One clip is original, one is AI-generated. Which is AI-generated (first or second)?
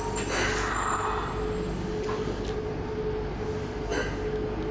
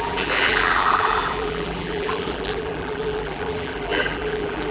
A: second